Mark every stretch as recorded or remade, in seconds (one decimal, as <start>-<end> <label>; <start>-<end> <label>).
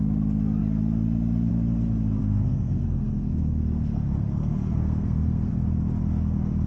0.0-2.2 recorded; 2.2-5.5 remade; 5.5-6.7 recorded